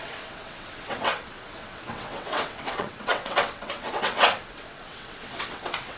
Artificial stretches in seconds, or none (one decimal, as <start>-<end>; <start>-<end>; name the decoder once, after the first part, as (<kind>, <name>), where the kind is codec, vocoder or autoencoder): 0.0-6.0 (vocoder, WaveNeXt)